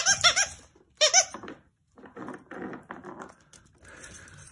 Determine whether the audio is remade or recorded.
recorded